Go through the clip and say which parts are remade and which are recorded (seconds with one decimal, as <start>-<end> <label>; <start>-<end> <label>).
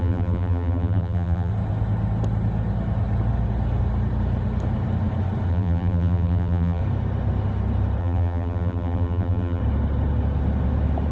0.0-1.5 remade; 1.5-5.5 recorded; 5.5-6.8 remade; 6.8-8.0 recorded; 8.0-9.6 remade; 9.6-11.1 recorded